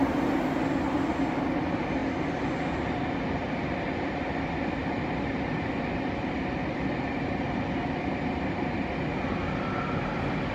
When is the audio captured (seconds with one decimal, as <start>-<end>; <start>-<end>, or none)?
0.0-10.5